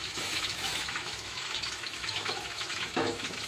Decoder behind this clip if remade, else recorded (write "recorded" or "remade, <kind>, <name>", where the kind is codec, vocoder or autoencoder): remade, autoencoder, DAC-VAE